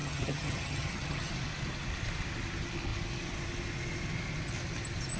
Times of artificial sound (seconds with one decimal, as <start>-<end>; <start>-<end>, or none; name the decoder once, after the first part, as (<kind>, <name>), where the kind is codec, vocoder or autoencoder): 0.0-1.3 (vocoder, HiFi-GAN)